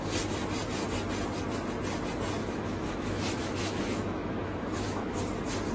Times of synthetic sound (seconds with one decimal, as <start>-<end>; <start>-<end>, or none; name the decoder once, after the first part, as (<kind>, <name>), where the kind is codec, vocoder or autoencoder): 2.4-5.2 (autoencoder, DAC-VAE)

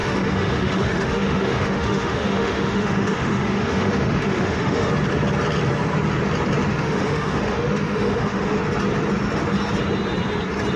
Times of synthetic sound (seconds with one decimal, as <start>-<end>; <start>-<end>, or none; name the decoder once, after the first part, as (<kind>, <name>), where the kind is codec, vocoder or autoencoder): 0.0-4.9 (autoencoder, DAC-VAE); 6.7-8.6

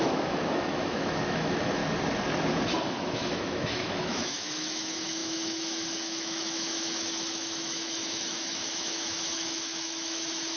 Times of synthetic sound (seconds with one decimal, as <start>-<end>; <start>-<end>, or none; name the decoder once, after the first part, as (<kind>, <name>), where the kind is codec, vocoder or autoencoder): 0.0-1.8 (autoencoder, DAC-VAE); 2.8-10.6

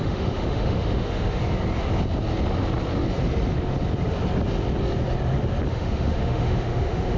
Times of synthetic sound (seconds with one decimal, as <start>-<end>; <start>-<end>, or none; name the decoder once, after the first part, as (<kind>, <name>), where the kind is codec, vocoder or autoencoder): 0.0-1.4 (autoencoder, DAC-VAE); 5.7-7.2

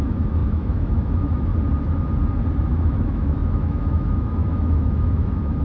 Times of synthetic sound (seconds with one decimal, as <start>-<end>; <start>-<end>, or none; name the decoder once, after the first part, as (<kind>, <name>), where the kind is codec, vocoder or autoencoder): 0.0-1.5 (autoencoder, DAC-VAE); 2.6-5.6

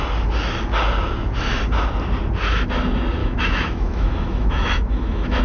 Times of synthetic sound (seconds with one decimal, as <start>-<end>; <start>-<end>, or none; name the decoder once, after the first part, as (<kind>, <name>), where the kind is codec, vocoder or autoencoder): 3.2-5.4 (autoencoder, DAC-VAE)

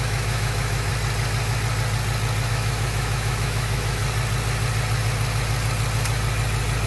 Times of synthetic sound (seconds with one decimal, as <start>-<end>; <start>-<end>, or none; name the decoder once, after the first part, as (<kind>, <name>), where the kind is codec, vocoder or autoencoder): 0.0-0.9 (autoencoder, DAC-VAE); 2.5-4.0

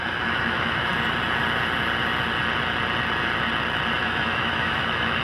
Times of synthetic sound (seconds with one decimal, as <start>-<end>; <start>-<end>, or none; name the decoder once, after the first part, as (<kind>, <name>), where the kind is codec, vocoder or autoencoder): 0.0-0.9 (autoencoder, DAC-VAE); 4.0-5.2